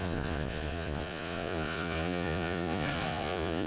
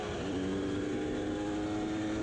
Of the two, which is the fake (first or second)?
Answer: first